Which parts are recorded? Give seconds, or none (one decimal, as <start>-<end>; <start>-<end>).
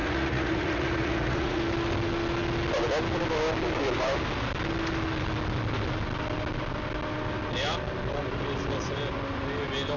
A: 1.6-10.0